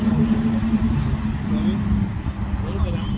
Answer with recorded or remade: recorded